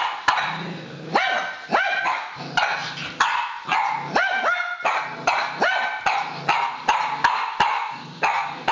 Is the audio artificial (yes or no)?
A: no